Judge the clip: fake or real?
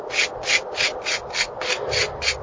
real